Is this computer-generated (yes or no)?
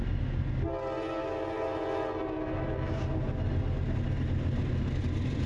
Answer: no